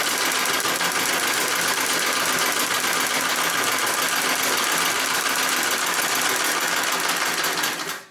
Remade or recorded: recorded